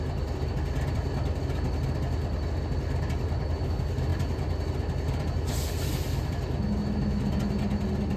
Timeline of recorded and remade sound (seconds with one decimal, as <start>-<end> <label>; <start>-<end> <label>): 0.0-8.2 recorded